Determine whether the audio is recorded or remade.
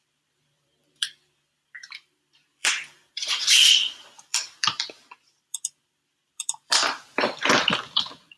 remade